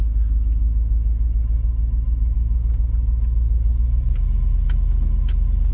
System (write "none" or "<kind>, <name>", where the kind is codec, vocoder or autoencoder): none